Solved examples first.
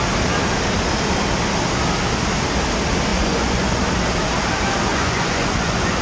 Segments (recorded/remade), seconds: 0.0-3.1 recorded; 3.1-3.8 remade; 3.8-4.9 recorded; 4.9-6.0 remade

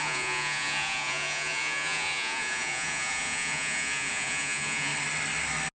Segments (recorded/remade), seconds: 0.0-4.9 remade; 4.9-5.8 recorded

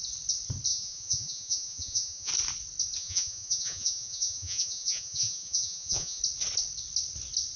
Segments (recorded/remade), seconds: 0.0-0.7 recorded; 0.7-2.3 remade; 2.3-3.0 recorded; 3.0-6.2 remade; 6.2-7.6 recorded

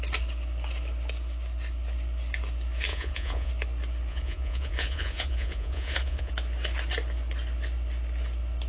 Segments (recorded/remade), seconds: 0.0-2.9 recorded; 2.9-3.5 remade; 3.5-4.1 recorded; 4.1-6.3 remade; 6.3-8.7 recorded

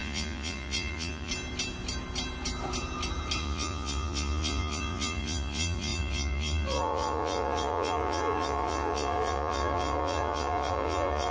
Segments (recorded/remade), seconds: 0.0-1.3 remade; 1.3-3.4 recorded; 3.4-11.3 remade